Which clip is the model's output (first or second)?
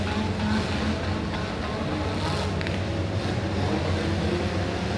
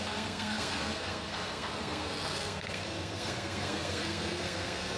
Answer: second